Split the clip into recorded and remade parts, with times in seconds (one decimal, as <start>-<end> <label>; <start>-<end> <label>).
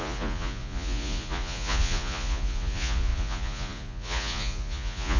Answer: 0.0-5.2 remade